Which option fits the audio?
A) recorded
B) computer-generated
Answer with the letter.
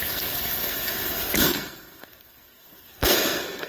B